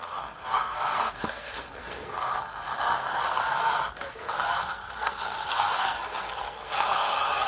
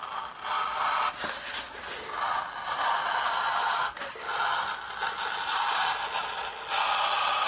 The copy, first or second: first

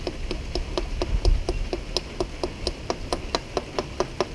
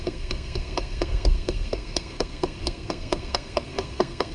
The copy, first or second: second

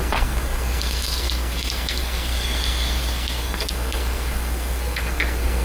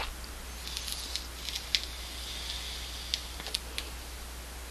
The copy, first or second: first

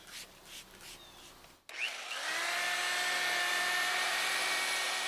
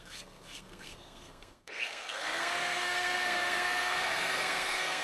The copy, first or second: second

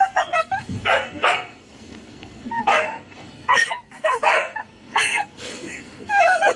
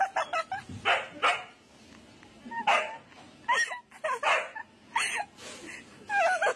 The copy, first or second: first